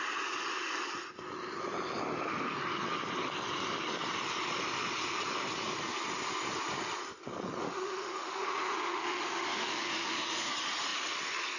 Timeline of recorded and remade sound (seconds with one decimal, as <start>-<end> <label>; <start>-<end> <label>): 0.0-7.6 recorded; 7.6-10.5 remade; 10.5-11.6 recorded